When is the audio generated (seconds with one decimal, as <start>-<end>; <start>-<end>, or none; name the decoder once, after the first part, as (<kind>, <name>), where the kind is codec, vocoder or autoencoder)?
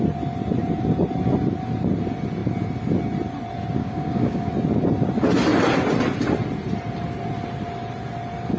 3.8-4.5 (codec, DAC)